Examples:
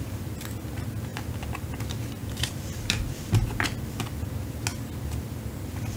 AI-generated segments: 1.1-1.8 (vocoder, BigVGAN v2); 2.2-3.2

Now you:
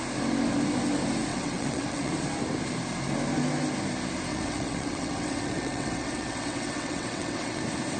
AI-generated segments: 1.3-2.1 (vocoder, WaveNeXt); 4.3-7.6

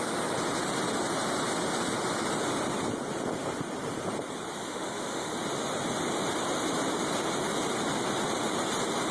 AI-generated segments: 4.7-5.3 (autoencoder, DAC-VAE)

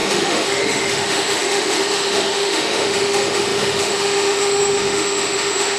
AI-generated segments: 0.0-5.8 (autoencoder, DAC-VAE)

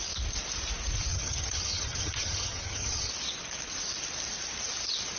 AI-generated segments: 1.1-3.1 (vocoder, HiFi-GAN)

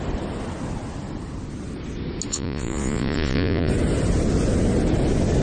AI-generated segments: 2.3-3.7 (vocoder, Vocos)

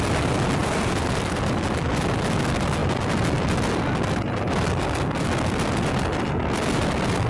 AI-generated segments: 0.6-1.9 (vocoder, BigVGAN v2)